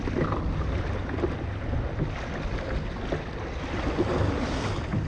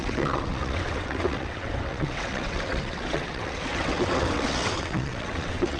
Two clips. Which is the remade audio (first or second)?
second